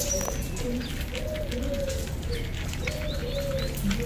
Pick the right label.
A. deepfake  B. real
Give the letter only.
B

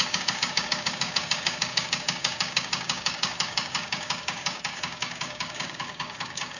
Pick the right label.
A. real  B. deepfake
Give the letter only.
B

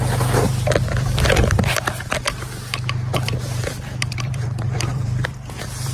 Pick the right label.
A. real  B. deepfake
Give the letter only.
B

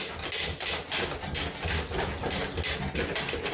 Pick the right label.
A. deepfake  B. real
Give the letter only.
B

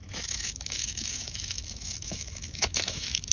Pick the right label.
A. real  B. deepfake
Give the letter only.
B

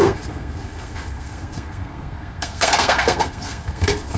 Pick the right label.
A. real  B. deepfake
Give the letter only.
B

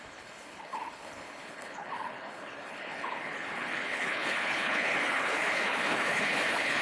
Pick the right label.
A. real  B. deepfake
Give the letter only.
B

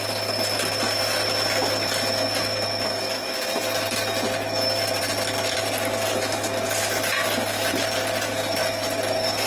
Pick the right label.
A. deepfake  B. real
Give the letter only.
B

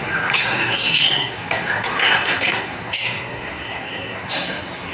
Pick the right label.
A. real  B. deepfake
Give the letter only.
B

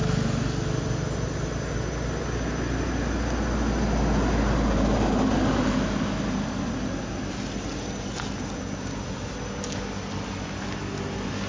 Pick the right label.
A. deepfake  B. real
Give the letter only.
B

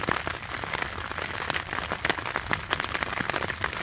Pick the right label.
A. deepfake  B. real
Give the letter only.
B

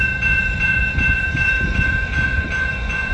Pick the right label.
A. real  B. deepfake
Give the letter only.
B